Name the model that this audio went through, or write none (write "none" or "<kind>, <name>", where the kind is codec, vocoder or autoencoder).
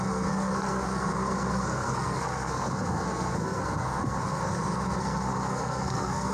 codec, SNAC